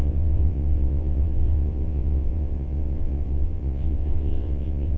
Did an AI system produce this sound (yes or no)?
yes